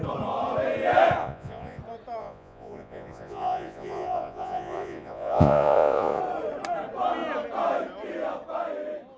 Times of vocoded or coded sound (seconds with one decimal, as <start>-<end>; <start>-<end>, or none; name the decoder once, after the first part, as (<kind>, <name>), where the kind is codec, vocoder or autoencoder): 1.2-1.8 (vocoder, Vocos); 2.2-6.2